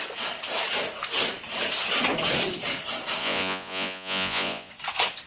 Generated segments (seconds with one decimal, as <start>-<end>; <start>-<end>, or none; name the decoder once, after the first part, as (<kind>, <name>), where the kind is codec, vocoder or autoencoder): 3.2-4.7 (vocoder, Vocos)